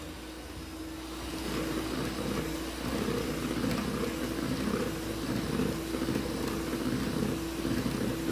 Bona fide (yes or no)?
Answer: yes